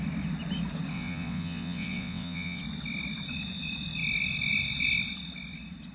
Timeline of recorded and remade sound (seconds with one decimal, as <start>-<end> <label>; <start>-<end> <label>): 0.0-0.9 recorded; 0.9-2.6 remade; 2.6-5.9 recorded